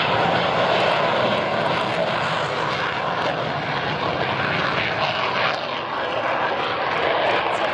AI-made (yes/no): no